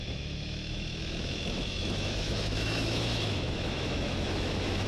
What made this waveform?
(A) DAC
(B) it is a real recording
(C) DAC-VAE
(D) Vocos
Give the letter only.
C